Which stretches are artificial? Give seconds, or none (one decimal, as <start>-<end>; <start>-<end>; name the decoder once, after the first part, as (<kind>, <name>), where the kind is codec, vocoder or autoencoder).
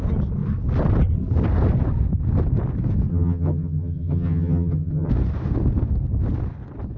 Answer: 3.1-5.1 (vocoder, HiFi-GAN)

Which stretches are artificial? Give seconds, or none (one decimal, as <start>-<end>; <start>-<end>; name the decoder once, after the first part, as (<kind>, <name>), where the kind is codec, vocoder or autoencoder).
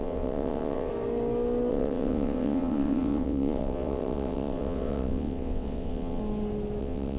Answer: 0.0-0.9 (vocoder, WaveNeXt); 1.7-6.2; 6.8-7.2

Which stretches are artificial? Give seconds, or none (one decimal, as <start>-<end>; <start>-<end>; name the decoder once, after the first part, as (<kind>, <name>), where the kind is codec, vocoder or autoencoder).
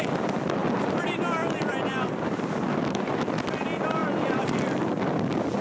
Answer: 4.0-4.8 (vocoder, BigVGAN v2)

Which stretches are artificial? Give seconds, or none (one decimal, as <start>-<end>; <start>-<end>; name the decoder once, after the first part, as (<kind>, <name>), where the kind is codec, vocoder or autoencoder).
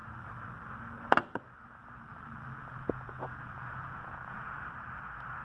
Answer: 2.6-4.6 (vocoder, Vocos)